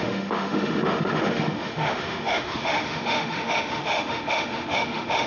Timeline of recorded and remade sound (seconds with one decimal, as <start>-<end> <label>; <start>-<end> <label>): 0.0-5.3 remade